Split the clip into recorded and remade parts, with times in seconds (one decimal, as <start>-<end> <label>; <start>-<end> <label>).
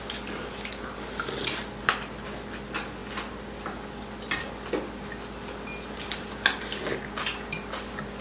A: 0.0-8.2 recorded